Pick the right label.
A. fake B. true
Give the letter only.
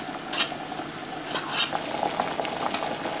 B